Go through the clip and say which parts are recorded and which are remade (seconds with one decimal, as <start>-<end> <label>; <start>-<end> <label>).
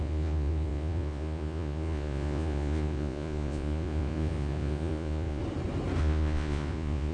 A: 0.0-5.4 remade; 5.4-6.0 recorded; 6.0-7.1 remade